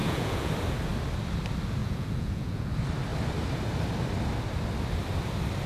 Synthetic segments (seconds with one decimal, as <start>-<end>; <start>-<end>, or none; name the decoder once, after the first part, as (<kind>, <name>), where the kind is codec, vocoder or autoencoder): 0.0-0.5 (vocoder, Vocos); 1.8-2.7